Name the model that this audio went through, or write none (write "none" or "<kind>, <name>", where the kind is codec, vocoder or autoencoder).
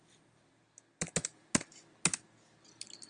none